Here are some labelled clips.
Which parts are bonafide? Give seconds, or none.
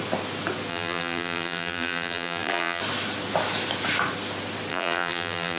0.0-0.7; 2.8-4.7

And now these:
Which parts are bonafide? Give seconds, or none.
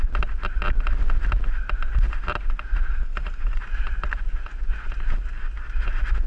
0.0-2.9; 3.6-6.3